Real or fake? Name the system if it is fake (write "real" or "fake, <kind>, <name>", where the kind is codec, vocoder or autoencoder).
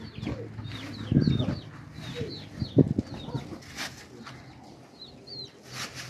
real